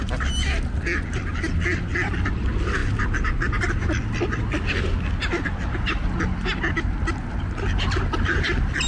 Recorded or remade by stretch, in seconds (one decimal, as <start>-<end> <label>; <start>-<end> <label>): 0.0-8.9 recorded